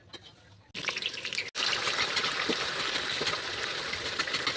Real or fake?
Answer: real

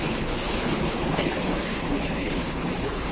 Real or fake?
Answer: fake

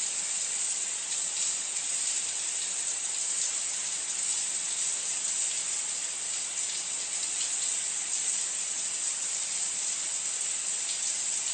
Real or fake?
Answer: real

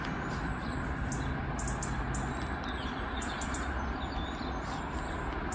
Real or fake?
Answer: real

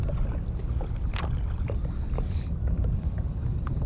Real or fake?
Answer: real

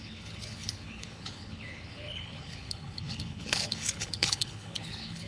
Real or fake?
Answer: fake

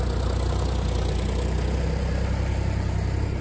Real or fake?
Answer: real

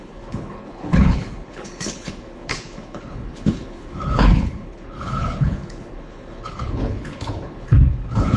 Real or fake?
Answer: fake